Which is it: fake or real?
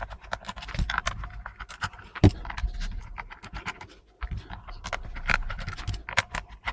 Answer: real